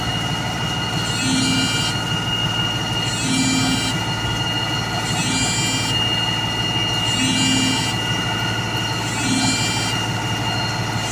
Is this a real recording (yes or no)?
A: yes